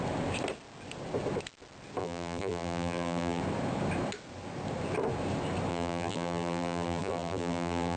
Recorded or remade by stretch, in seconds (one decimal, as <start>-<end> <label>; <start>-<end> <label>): 0.0-2.0 recorded; 2.0-3.4 remade; 3.4-5.7 recorded; 5.7-8.0 remade